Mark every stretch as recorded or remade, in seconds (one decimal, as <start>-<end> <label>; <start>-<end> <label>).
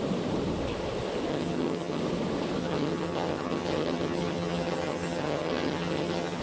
0.0-1.3 recorded; 1.3-2.0 remade; 2.0-2.6 recorded; 2.6-6.4 remade